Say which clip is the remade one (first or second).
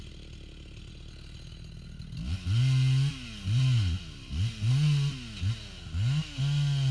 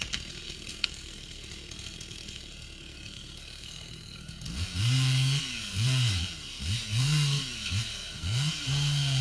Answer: second